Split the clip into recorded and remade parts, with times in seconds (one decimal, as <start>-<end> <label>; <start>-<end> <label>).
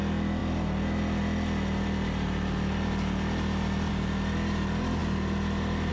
0.0-5.9 recorded